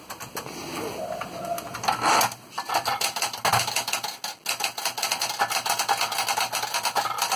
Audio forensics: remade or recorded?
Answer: recorded